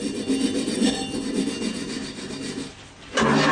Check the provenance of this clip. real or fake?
real